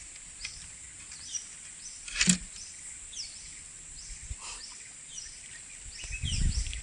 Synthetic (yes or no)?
no